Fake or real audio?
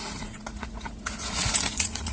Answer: fake